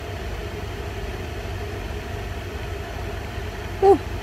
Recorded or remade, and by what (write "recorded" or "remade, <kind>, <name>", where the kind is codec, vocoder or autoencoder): recorded